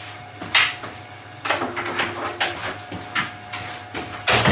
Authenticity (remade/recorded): recorded